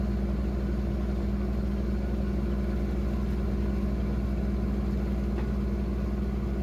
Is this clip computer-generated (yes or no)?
no